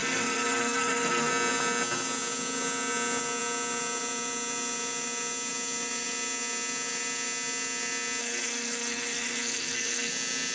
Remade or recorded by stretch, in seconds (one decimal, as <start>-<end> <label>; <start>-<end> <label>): 0.0-1.3 remade; 1.3-8.2 recorded; 8.2-10.1 remade; 10.1-10.5 recorded